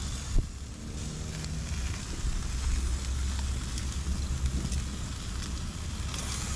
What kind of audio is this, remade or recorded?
recorded